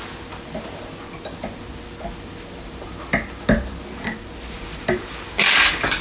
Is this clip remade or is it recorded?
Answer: recorded